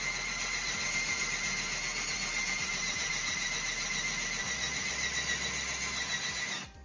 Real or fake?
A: real